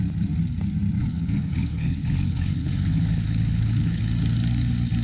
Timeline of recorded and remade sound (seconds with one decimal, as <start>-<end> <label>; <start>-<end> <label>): 0.0-1.0 recorded; 1.0-4.0 remade; 4.0-5.0 recorded